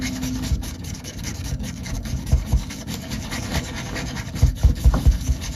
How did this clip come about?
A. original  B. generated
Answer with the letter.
B